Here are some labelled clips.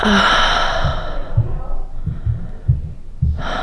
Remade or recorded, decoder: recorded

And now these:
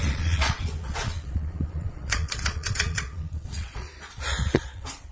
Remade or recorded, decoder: remade, vocoder, Vocos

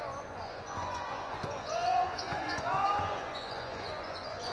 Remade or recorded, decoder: remade, vocoder, Vocos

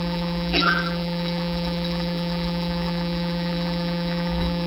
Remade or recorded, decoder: remade, vocoder, BigVGAN v2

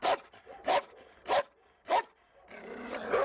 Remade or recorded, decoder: recorded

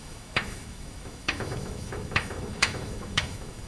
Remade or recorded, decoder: remade, autoencoder, DAC-VAE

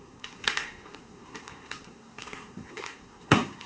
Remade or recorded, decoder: remade, codec, SNAC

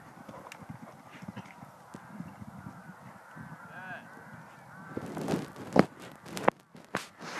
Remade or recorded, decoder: recorded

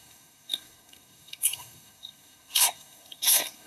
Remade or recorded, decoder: remade, codec, SNAC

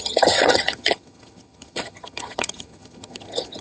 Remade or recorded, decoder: remade, vocoder, HiFi-GAN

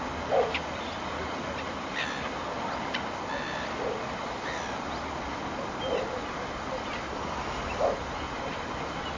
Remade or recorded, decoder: recorded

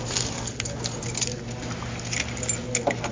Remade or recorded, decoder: recorded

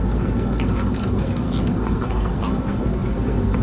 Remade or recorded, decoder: remade, codec, SNAC